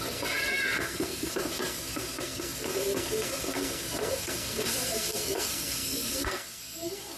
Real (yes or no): no